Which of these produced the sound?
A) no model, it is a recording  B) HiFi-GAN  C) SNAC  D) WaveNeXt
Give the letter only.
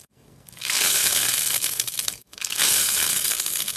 C